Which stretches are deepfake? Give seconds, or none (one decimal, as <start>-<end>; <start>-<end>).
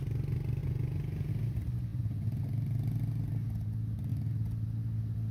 0.6-1.3; 1.9-2.4